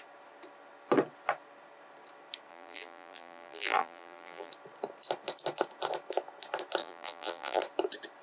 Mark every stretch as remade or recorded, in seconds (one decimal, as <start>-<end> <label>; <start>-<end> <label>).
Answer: 0.0-2.5 recorded; 2.5-4.5 remade; 4.5-6.8 recorded; 6.8-7.6 remade; 7.6-8.2 recorded